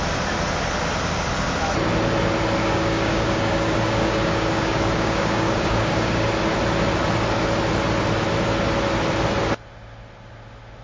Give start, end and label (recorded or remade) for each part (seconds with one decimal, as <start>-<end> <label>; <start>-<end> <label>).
0.0-2.6 recorded; 2.6-6.3 remade; 6.3-10.8 recorded